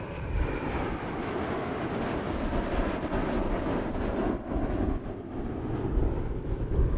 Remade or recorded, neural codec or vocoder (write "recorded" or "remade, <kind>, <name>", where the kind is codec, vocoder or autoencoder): recorded